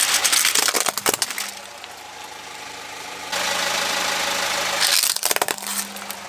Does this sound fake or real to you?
real